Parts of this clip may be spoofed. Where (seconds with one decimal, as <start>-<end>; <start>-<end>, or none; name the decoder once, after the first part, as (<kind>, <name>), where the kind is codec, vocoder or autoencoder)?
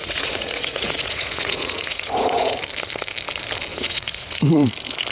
0.0-2.6 (vocoder, Vocos); 3.7-4.5